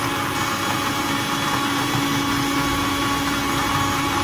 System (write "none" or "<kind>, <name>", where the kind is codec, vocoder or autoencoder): none